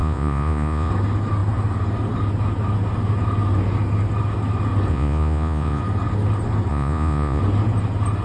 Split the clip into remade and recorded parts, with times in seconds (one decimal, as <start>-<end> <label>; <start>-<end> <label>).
0.0-0.9 remade; 0.9-4.9 recorded; 4.9-5.8 remade; 5.8-6.7 recorded; 6.7-7.4 remade; 7.4-8.2 recorded

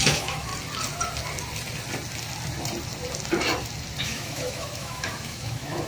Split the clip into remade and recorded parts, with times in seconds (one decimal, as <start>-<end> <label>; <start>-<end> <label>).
0.0-0.5 remade; 0.5-4.0 recorded; 4.0-5.9 remade

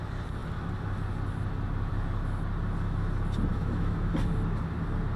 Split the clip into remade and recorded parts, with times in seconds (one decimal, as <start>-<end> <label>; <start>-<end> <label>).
0.0-3.5 recorded; 3.5-4.1 remade; 4.1-5.2 recorded